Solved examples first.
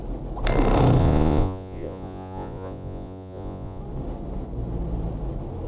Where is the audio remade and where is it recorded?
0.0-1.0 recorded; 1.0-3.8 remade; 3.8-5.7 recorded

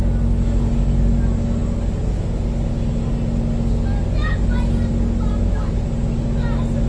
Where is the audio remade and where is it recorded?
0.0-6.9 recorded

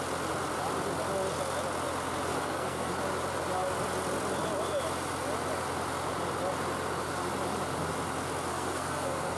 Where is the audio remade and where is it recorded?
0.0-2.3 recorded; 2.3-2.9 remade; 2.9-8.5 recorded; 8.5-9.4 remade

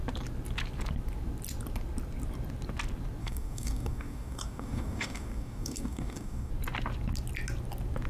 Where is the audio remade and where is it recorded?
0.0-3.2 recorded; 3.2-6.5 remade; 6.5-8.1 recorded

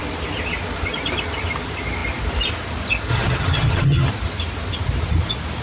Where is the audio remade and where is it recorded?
0.0-3.1 recorded; 3.1-4.1 remade; 4.1-5.6 recorded

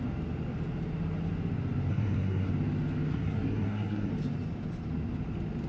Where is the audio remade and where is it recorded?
0.0-1.9 recorded; 1.9-2.5 remade; 2.5-3.1 recorded; 3.1-4.1 remade; 4.1-5.7 recorded